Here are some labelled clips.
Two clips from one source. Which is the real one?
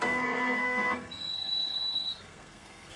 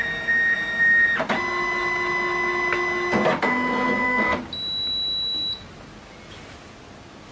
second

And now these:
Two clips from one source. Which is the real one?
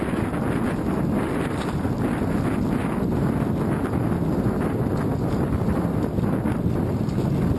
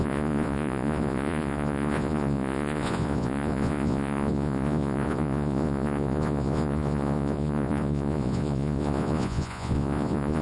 first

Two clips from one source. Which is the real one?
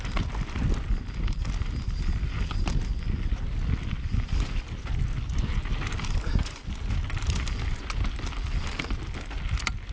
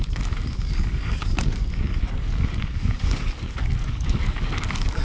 first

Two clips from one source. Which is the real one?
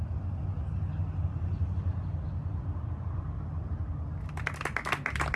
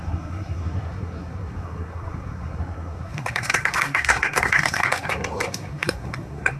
first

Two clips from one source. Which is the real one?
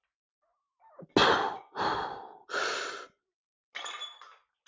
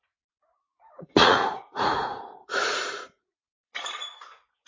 first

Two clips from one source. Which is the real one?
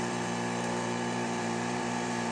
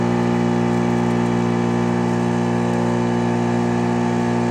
second